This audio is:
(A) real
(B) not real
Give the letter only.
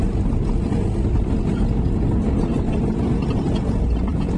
A